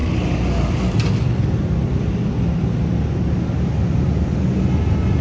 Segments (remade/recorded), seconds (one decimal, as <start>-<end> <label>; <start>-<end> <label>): 0.0-5.2 recorded